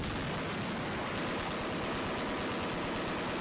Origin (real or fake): real